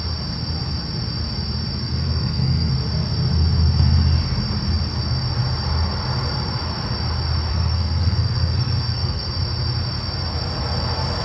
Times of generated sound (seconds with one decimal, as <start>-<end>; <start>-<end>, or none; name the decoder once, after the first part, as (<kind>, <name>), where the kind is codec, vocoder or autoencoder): 1.8-2.7 (codec, SNAC); 7.5-9.3

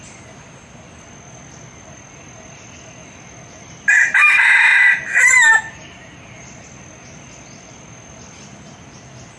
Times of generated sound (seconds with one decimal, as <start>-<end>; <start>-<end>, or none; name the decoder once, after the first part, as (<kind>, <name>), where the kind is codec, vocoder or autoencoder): none

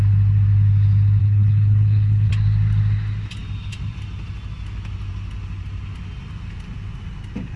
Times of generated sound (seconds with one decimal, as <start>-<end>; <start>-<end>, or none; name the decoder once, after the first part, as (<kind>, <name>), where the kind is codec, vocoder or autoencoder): 1.2-2.3 (codec, HILCodec)

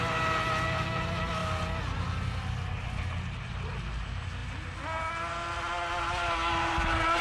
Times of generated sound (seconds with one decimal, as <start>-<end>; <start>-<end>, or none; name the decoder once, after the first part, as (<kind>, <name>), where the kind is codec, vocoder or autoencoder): none